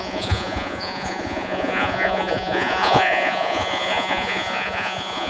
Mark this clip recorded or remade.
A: remade